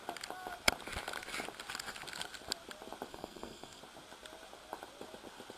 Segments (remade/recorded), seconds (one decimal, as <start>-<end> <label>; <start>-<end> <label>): 0.0-3.1 recorded; 3.1-3.8 remade; 3.8-5.6 recorded